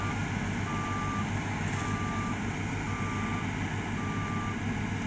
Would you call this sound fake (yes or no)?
no